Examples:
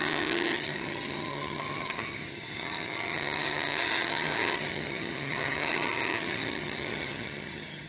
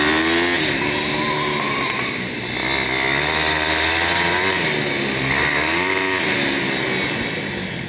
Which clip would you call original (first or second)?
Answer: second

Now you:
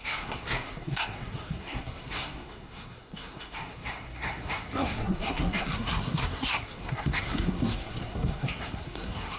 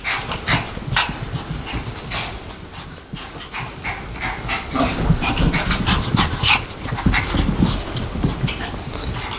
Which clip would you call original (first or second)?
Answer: second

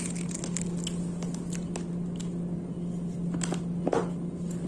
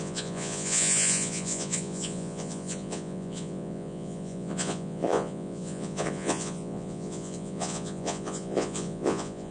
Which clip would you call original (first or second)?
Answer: first